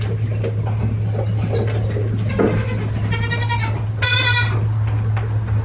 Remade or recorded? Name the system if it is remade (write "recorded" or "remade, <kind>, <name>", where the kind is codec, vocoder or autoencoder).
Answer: recorded